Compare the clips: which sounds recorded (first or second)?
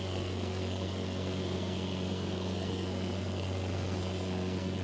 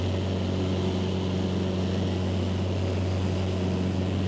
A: second